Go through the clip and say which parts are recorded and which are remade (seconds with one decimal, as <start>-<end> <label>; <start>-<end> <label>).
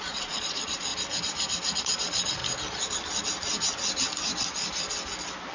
0.0-0.9 remade; 0.9-1.8 recorded; 1.8-2.4 remade; 2.4-5.5 recorded